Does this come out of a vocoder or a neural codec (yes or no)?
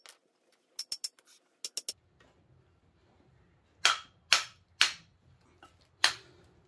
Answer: no